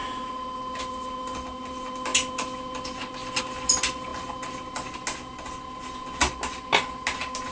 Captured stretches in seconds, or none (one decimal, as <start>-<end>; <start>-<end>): 0.0-7.5